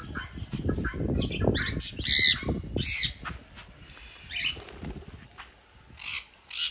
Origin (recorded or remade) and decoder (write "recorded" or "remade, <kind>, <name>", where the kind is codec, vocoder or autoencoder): recorded